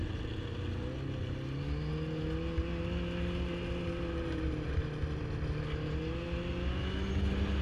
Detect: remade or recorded recorded